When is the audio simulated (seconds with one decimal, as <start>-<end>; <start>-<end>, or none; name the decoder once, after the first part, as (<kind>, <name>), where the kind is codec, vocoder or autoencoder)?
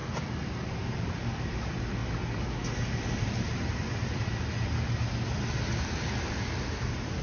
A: 0.0-2.0 (vocoder, BigVGAN v2); 5.8-7.2